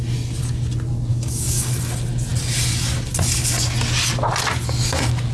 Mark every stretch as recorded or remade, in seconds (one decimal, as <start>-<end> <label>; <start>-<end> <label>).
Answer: 0.0-1.1 recorded; 1.1-1.7 remade; 1.7-5.3 recorded